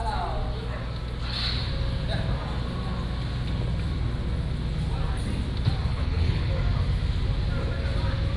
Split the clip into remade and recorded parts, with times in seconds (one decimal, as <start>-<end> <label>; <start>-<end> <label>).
0.0-5.9 recorded; 5.9-6.5 remade; 6.5-8.4 recorded